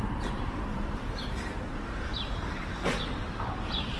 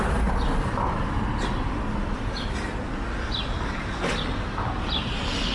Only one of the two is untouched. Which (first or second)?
second